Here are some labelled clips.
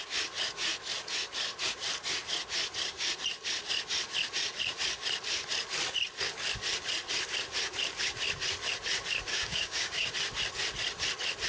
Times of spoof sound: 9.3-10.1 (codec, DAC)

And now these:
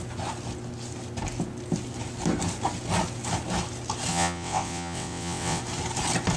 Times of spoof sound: 4.1-5.6 (vocoder, WaveNeXt)

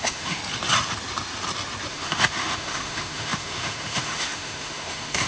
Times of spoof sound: 0.0-0.4 (autoencoder, DAC-VAE); 1.9-5.3

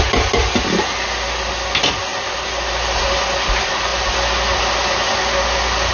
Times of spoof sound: none